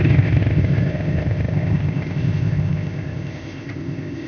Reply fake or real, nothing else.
fake